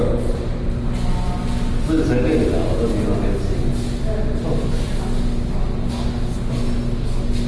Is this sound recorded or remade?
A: recorded